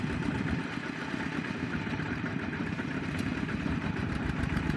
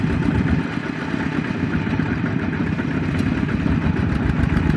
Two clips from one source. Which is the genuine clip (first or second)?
second